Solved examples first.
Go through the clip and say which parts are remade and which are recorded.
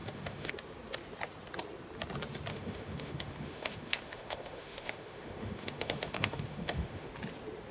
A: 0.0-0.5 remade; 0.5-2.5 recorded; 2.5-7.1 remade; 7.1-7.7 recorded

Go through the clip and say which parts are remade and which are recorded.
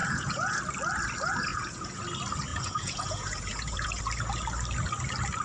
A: 0.0-0.6 remade; 0.6-1.5 recorded; 1.5-2.0 remade; 2.0-2.5 recorded; 2.5-4.0 remade; 4.0-5.4 recorded